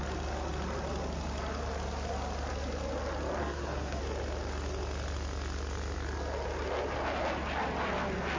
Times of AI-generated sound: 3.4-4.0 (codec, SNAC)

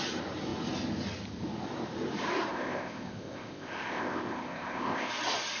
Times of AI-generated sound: 2.5-5.1 (codec, ZipCodec)

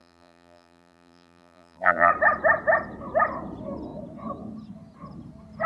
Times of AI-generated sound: 0.0-2.1 (vocoder, BigVGAN v2)

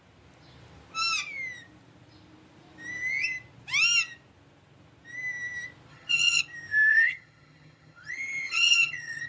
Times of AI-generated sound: 5.9-6.4 (vocoder, HiFi-GAN); 6.9-9.3

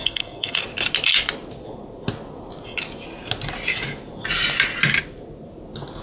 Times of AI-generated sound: 0.0-0.6 (codec, SNAC)